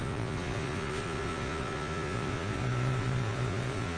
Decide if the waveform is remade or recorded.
remade